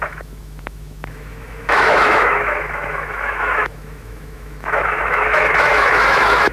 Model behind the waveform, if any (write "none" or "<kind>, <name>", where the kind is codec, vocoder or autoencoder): autoencoder, DAC-VAE